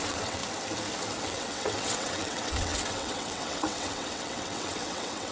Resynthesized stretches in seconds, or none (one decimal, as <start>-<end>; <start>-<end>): 0.0-0.4; 1.2-5.3